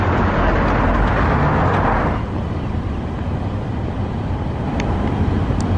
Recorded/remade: recorded